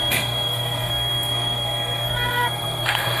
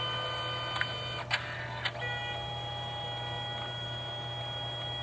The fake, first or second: first